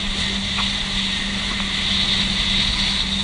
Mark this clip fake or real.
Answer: real